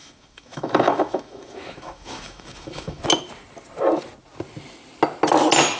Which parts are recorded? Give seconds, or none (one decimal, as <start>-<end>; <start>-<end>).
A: 3.0-5.8